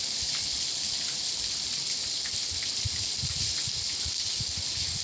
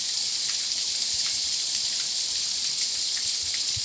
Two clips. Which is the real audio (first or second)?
first